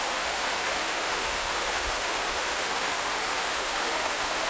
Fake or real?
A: fake